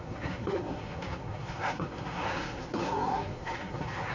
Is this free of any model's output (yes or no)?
no